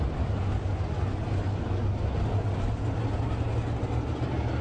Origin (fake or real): real